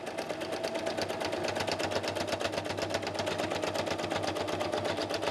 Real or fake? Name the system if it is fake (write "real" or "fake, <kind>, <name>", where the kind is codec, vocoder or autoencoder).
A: real